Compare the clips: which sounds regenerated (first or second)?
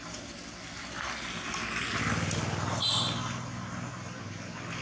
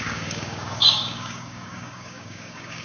second